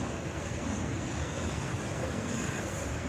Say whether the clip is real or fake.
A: fake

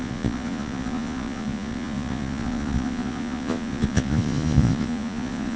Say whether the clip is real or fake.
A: fake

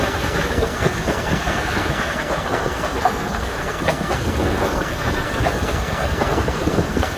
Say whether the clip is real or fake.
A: fake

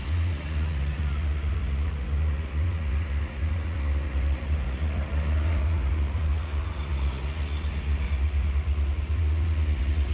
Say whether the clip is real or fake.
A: fake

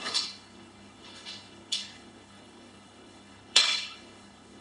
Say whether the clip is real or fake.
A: fake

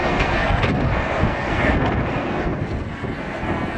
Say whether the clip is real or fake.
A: fake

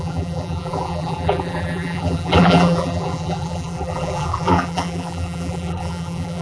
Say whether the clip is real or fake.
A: fake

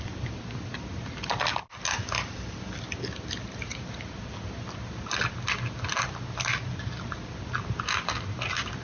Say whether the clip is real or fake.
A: real